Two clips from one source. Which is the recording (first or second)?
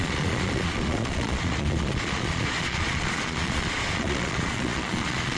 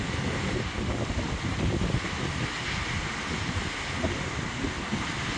second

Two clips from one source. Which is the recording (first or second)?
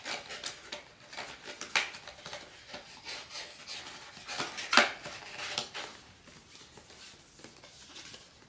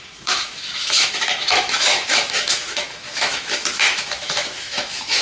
first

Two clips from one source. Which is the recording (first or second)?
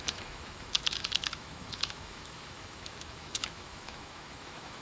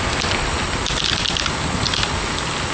second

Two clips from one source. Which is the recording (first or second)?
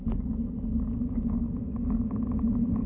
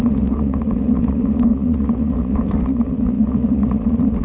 first